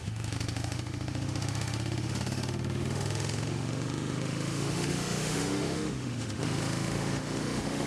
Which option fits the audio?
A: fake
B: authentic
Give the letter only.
A